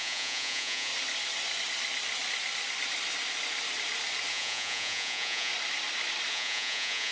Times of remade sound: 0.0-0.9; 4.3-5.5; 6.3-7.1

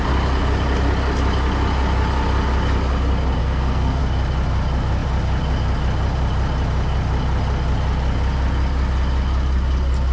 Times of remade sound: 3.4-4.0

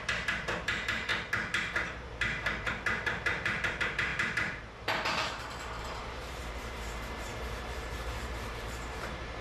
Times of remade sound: 0.0-1.1; 1.6-9.4

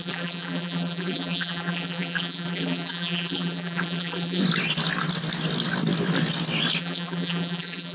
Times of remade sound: 0.0-4.4; 6.8-7.9